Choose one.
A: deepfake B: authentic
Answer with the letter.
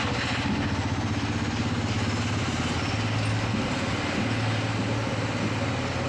B